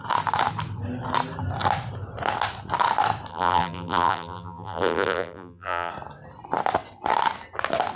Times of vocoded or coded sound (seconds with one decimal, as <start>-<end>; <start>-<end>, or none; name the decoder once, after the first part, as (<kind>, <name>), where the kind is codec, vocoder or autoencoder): 3.3-5.9 (vocoder, BigVGAN v2)